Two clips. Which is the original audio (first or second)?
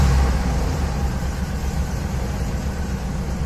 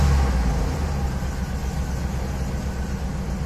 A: second